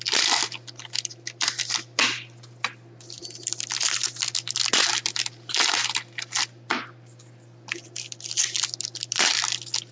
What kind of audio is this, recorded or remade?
recorded